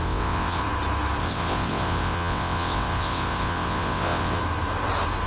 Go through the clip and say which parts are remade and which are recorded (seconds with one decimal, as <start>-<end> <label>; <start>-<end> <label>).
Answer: 0.0-0.6 remade; 0.6-1.2 recorded; 1.2-4.4 remade; 4.4-5.3 recorded